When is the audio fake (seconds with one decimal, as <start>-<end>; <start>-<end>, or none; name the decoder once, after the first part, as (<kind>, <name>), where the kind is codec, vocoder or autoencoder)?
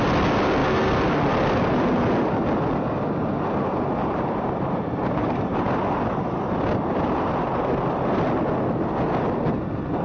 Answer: 4.0-5.7 (vocoder, BigVGAN v2)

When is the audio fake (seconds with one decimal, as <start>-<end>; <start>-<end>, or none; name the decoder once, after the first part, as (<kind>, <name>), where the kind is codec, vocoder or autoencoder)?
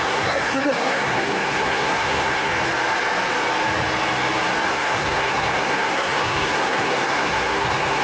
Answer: 0.0-2.5 (codec, SNAC); 4.7-8.0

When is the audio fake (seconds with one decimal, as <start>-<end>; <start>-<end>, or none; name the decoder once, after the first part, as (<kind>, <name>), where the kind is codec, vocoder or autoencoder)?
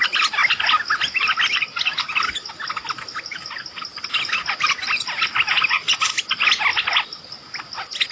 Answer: none